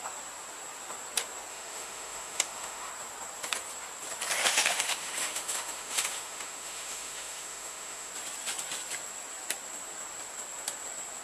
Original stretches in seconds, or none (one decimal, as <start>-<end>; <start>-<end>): 0.0-1.5; 2.9-4.4; 8.1-11.2